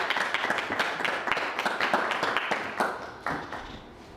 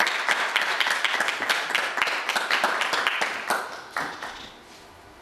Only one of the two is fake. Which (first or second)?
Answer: first